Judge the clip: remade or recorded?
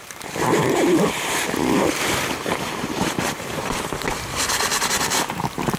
remade